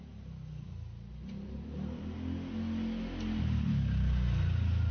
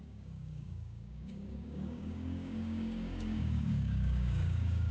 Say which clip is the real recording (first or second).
first